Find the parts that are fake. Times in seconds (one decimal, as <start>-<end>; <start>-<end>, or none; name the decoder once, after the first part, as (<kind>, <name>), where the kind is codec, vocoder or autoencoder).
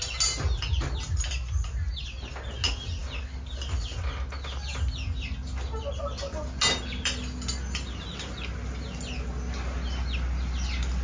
none